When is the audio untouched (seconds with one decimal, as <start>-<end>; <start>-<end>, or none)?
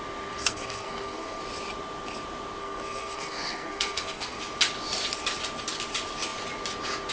0.0-0.4; 1.4-2.6; 4.4-7.1